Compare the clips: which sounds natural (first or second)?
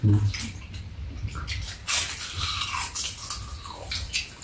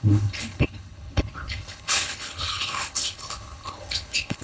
first